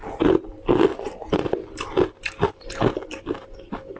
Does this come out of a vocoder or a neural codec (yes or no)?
no